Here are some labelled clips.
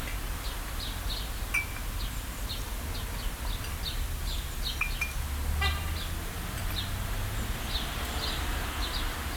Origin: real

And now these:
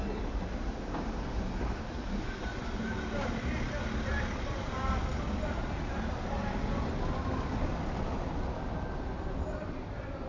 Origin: real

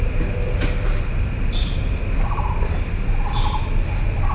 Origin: real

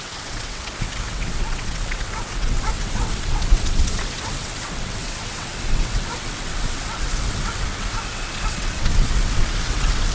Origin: fake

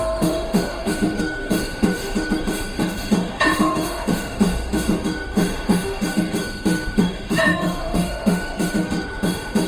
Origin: fake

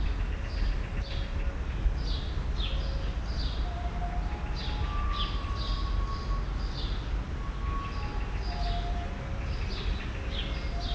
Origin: real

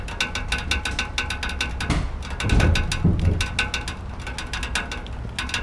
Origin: real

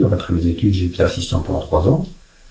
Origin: fake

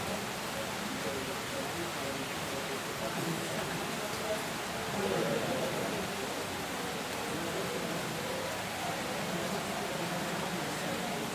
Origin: real